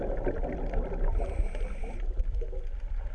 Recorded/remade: recorded